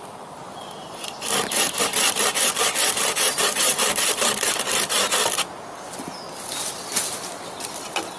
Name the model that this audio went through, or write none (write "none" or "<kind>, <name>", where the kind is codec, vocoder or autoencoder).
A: none